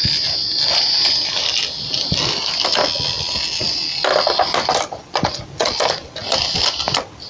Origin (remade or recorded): recorded